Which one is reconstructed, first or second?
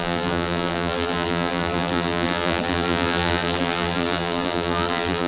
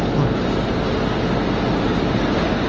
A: first